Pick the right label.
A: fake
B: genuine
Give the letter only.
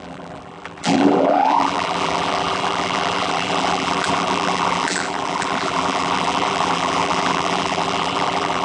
A